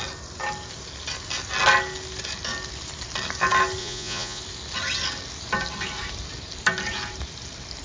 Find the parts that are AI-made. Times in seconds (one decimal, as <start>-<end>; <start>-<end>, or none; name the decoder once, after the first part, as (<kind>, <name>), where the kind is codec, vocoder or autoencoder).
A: 3.8-4.4 (vocoder, Vocos)